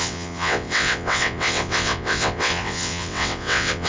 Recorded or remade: remade